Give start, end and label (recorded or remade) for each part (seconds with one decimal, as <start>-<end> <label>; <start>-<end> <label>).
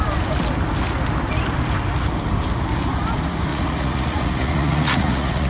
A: 0.0-3.5 recorded; 3.5-5.5 remade